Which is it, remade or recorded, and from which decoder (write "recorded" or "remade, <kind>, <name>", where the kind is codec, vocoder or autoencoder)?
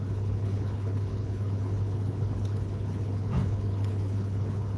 remade, codec, HILCodec